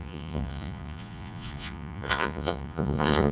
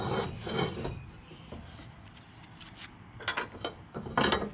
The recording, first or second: second